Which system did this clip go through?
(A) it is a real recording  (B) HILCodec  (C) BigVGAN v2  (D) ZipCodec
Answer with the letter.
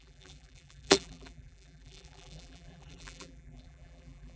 C